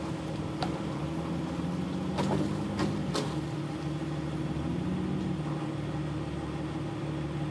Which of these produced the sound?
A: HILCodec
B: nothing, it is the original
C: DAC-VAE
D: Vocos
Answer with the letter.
B